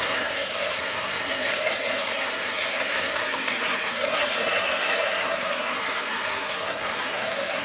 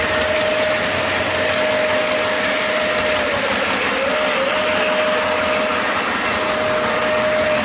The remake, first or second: first